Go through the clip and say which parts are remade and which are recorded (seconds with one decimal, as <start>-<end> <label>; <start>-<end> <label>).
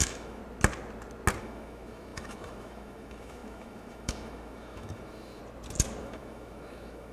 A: 0.0-0.4 remade; 0.4-1.4 recorded; 1.4-5.4 remade; 5.4-6.0 recorded; 6.0-7.1 remade